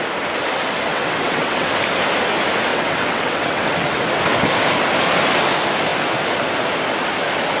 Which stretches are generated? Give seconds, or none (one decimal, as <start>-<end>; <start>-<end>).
0.9-1.7; 2.7-4.0